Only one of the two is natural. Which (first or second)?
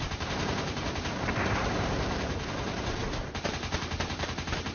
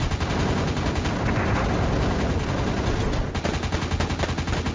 second